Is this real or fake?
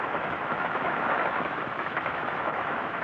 fake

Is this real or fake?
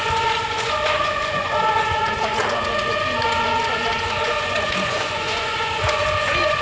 fake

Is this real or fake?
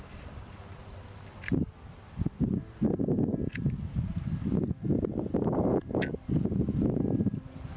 real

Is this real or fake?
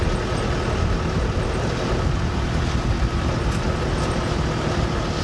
real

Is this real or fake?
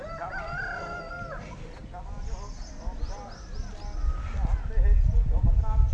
real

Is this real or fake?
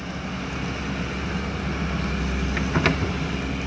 real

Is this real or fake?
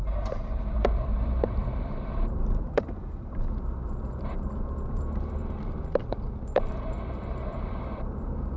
fake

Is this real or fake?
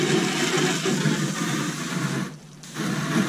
real